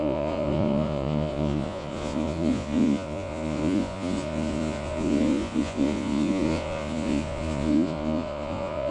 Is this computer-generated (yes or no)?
yes